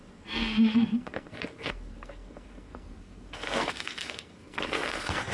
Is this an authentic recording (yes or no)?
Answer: no